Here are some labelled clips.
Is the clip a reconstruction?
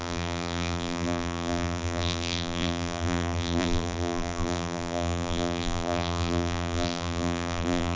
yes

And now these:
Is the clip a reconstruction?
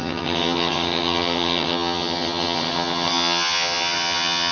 yes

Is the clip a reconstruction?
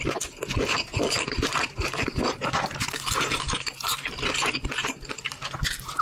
yes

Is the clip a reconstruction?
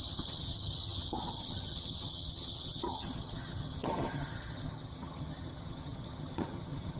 yes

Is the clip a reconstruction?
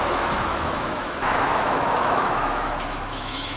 yes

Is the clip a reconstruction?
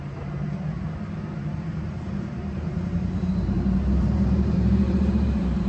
yes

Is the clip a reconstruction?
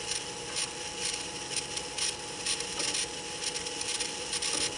no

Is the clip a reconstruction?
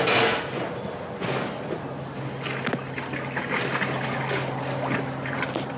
no